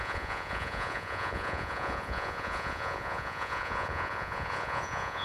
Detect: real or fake fake